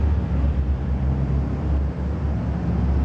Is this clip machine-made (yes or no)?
no